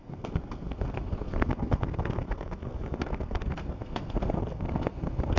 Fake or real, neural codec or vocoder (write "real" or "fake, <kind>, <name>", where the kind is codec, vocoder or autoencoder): fake, codec, SNAC